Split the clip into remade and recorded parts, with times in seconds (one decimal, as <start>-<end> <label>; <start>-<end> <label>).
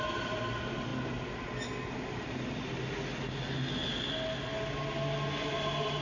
0.0-6.0 recorded